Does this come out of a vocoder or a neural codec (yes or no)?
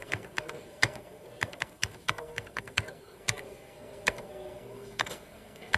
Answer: yes